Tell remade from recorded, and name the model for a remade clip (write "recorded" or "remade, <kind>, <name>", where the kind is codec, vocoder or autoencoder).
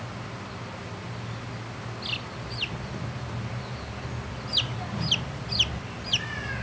recorded